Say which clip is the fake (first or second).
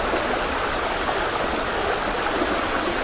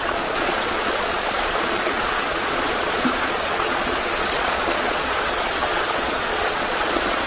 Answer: second